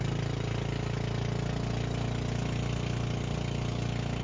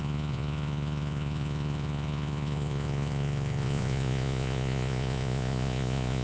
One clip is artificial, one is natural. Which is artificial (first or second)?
second